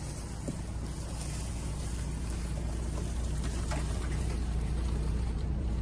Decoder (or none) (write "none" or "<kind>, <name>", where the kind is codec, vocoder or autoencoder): vocoder, BigVGAN v2